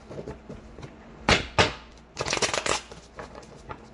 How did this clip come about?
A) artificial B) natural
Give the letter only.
A